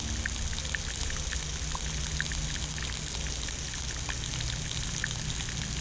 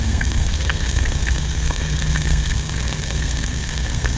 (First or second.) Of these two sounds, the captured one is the first